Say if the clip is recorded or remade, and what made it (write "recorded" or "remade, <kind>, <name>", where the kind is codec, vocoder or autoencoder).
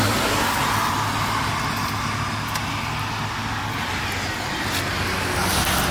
recorded